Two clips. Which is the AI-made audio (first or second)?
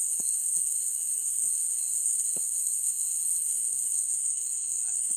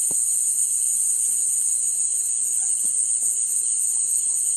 first